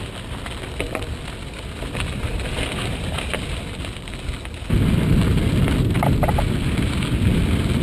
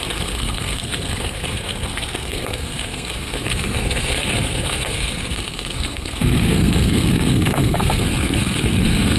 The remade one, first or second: second